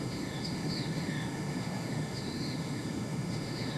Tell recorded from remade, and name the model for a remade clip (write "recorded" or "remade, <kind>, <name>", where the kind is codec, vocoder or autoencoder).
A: remade, autoencoder, DAC-VAE